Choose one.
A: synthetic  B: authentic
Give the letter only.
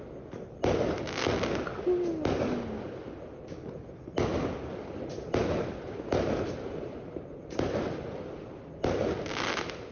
B